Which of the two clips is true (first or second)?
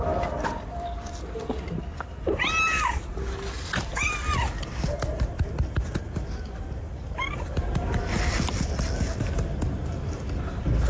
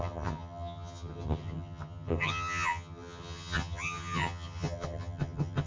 first